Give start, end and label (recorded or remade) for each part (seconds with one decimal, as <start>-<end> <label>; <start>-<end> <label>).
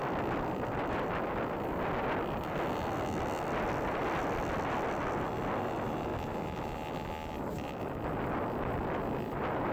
0.0-9.7 recorded